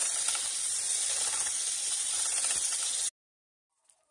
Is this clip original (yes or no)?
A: yes